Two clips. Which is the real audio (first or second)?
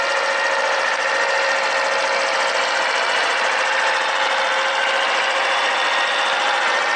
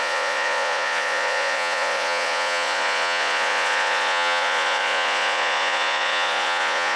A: first